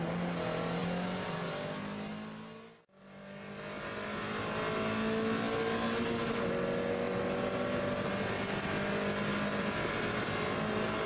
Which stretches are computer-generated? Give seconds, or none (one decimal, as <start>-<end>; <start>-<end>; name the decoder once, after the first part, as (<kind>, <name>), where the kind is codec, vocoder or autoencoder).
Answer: none